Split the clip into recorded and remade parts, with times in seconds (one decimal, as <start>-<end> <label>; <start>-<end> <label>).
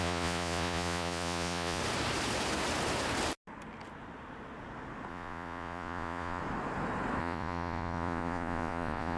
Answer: 0.0-1.8 remade; 1.8-5.1 recorded; 5.1-6.4 remade; 6.4-7.2 recorded; 7.2-9.2 remade